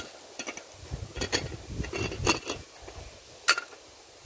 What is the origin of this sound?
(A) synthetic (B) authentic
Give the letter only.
B